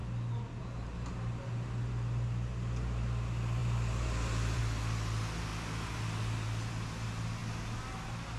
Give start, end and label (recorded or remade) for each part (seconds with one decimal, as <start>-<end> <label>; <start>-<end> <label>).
0.0-3.6 recorded; 3.6-4.6 remade; 4.6-8.4 recorded